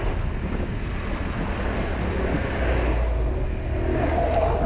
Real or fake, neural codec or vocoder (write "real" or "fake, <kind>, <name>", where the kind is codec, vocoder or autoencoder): real